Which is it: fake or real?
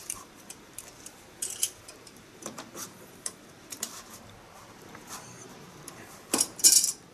fake